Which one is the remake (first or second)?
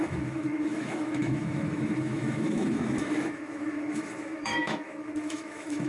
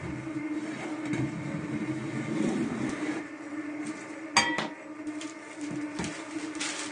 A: first